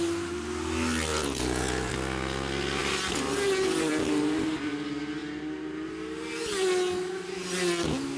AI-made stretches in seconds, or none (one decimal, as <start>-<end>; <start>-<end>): 1.1-1.9